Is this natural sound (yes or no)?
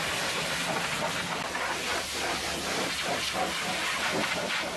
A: yes